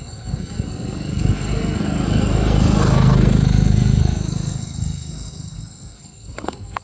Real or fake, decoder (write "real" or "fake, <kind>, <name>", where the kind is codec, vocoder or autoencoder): fake, codec, SNAC